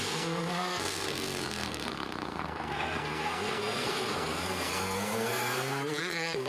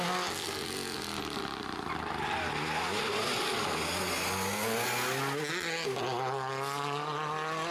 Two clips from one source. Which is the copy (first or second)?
first